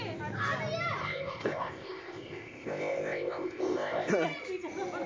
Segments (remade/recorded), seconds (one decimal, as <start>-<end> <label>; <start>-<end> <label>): 0.0-1.0 recorded; 1.0-4.1 remade; 4.1-5.1 recorded